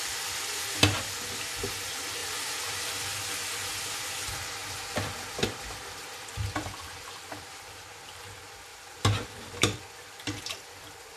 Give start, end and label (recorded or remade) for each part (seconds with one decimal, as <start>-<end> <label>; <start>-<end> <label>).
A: 0.0-4.6 recorded; 4.6-6.8 remade; 6.8-8.7 recorded; 8.7-9.8 remade; 9.8-11.2 recorded